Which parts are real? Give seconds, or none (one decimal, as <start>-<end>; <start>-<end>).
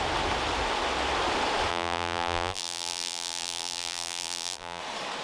0.0-1.7; 4.8-5.2